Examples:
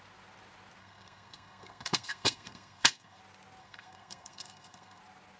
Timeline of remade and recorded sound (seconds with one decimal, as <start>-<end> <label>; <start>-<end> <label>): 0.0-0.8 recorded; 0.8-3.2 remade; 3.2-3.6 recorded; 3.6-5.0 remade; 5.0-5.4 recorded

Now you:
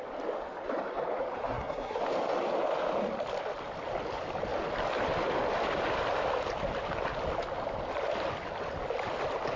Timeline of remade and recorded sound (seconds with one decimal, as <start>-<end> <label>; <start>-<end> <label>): 0.0-1.4 recorded; 1.4-2.0 remade; 2.0-9.6 recorded

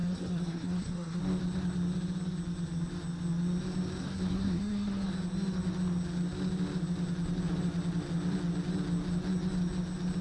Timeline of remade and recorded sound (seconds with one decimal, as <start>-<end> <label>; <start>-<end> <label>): 0.0-1.2 remade; 1.2-4.0 recorded; 4.0-5.1 remade; 5.1-10.2 recorded

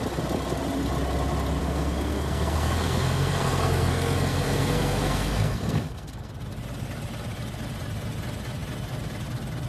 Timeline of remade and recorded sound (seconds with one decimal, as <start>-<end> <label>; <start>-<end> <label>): 0.0-1.6 recorded; 1.6-6.3 remade; 6.3-9.7 recorded

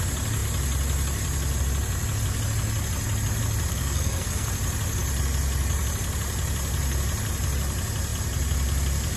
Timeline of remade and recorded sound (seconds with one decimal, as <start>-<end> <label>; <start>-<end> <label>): 0.0-3.7 recorded; 3.7-4.5 remade; 4.5-9.2 recorded